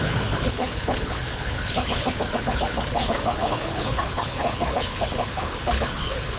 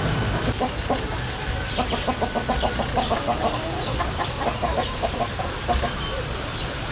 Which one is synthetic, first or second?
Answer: first